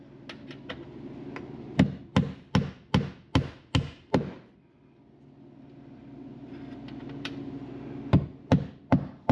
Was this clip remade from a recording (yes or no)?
no